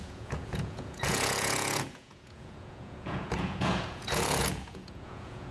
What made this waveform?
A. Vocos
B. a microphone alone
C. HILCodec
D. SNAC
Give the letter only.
A